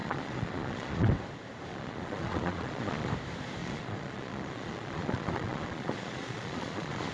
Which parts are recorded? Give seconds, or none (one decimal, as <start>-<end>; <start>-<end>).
1.1-1.7; 3.1-3.6